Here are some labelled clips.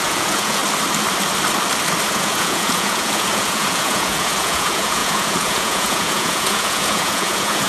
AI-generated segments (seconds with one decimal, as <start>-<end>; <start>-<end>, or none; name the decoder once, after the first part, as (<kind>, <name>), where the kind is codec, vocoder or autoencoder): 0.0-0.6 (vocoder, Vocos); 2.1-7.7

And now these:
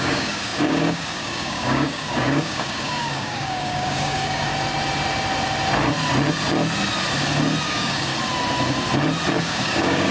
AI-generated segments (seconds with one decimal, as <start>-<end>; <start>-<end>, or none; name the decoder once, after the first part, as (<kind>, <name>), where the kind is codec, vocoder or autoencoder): 0.0-4.5 (codec, DAC); 7.6-8.1; 9.4-10.1

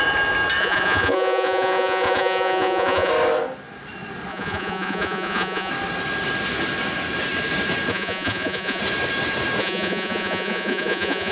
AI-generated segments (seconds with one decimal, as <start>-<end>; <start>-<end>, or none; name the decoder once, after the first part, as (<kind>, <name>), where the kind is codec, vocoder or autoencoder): 0.6-3.1 (vocoder, Vocos); 4.3-5.7; 7.9-8.8; 9.6-11.3